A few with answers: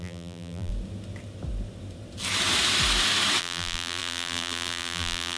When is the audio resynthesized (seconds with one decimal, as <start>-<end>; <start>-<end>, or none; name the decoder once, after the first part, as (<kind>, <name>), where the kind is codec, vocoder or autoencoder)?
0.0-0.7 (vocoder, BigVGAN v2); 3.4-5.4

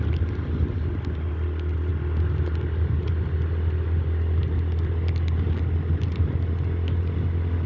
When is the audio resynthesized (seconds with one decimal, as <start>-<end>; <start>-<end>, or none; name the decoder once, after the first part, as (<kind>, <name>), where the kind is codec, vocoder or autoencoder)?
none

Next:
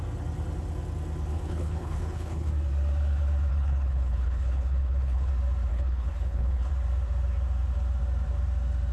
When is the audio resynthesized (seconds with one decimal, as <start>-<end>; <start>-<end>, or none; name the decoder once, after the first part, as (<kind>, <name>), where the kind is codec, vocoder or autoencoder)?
1.3-2.5 (codec, HILCodec); 3.5-5.3; 5.7-6.7

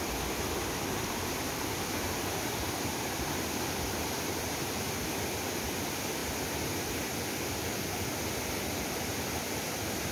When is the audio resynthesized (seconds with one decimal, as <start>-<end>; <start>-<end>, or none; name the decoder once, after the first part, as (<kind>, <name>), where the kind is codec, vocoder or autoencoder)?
0.0-6.2 (vocoder, BigVGAN v2); 8.9-10.1

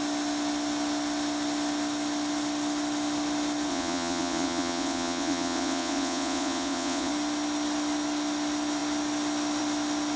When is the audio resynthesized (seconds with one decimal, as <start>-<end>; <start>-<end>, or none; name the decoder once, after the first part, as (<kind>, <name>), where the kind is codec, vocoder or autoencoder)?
3.7-7.1 (vocoder, Vocos)

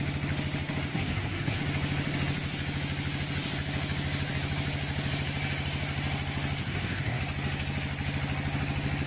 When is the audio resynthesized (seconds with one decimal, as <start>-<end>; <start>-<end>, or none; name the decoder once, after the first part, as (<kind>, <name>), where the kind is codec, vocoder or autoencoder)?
0.9-1.6 (codec, SNAC); 6.6-7.2